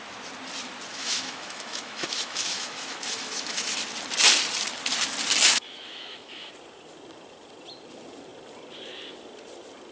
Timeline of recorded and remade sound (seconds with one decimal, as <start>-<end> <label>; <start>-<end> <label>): 0.0-0.9 recorded; 0.9-3.7 remade; 3.7-5.5 recorded; 5.5-6.5 remade; 6.5-9.9 recorded